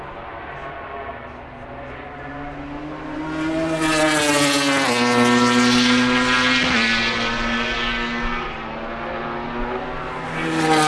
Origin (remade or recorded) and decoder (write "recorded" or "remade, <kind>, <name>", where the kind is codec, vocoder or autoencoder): recorded